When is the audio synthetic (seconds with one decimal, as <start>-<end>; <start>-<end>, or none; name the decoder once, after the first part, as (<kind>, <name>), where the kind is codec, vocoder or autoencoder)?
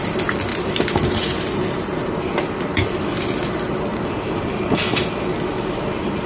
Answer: 0.5-3.0 (vocoder, BigVGAN v2); 3.9-4.6